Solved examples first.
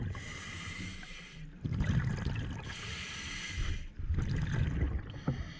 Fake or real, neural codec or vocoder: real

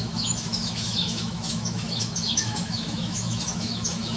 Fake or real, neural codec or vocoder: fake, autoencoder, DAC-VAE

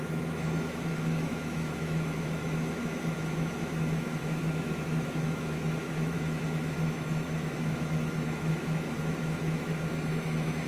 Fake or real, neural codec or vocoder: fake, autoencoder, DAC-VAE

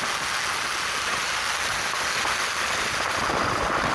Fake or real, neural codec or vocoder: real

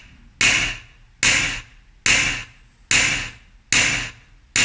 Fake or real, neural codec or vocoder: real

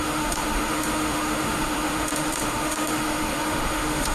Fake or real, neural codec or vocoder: fake, autoencoder, DAC-VAE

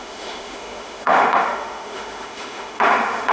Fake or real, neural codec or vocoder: fake, autoencoder, DAC-VAE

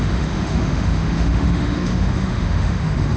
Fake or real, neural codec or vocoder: fake, autoencoder, DAC-VAE